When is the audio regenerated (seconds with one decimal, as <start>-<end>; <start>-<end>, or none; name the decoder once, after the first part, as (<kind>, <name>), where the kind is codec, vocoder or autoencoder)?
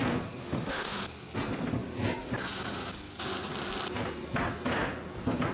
0.4-1.0 (autoencoder, DAC-VAE)